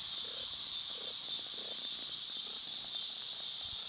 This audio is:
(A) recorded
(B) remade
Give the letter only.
A